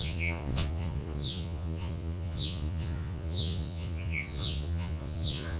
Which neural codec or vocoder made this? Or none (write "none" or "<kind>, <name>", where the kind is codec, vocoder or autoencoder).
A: vocoder, Vocos